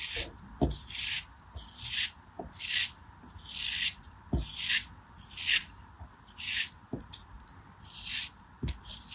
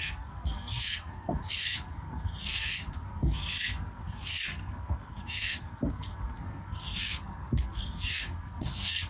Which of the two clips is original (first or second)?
first